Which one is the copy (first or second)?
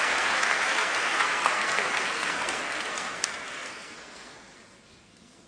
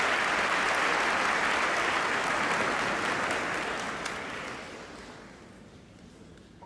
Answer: first